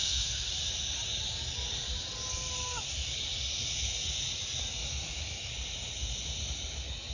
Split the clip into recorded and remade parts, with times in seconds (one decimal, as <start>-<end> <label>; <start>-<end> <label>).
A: 0.0-0.5 remade; 0.5-4.8 recorded; 4.8-5.5 remade; 5.5-7.1 recorded